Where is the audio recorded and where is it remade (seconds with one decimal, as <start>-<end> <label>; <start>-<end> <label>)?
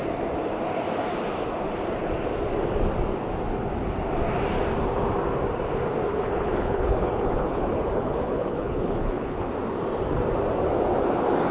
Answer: 0.0-6.1 recorded; 6.1-9.5 remade; 9.5-11.5 recorded